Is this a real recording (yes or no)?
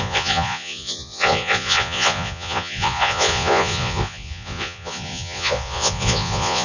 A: no